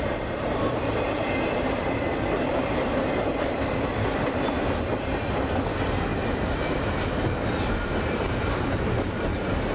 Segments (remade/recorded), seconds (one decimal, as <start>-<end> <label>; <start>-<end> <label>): 0.0-9.7 remade